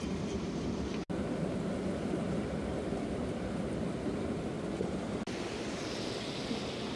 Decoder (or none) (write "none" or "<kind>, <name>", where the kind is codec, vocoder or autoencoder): none